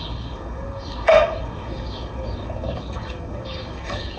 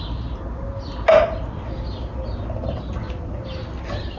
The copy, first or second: first